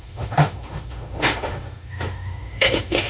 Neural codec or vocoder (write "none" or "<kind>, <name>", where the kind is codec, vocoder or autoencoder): autoencoder, DAC-VAE